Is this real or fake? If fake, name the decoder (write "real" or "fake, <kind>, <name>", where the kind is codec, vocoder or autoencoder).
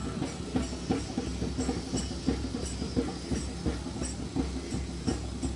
real